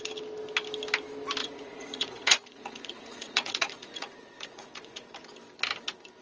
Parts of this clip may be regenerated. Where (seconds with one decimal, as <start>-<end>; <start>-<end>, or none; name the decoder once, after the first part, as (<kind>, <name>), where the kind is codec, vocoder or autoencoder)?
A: 1.4-5.1 (vocoder, Vocos)